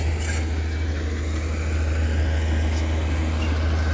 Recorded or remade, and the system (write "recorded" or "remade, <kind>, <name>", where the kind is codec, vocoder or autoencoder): recorded